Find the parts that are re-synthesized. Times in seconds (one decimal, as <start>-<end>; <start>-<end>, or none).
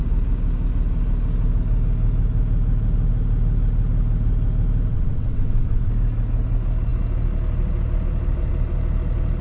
4.9-5.9